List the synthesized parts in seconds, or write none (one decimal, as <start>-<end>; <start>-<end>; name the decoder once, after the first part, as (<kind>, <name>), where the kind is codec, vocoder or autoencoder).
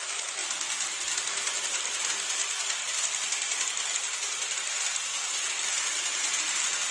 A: 0.0-0.4 (vocoder, BigVGAN v2); 1.6-2.4; 6.5-6.9